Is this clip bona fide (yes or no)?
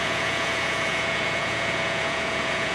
no